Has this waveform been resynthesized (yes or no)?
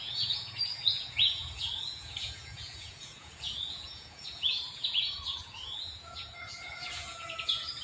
yes